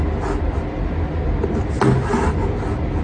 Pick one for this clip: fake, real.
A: real